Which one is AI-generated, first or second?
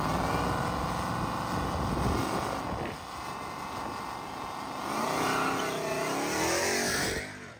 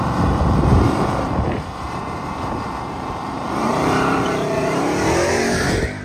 second